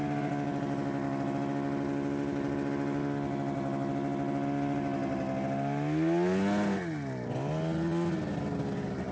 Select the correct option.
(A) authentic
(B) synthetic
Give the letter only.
A